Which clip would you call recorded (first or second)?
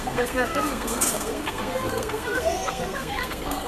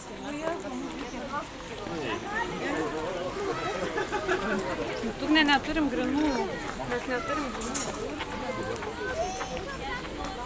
second